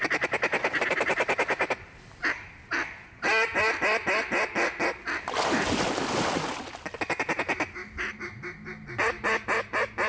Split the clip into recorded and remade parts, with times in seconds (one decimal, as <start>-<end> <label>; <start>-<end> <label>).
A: 0.0-10.1 recorded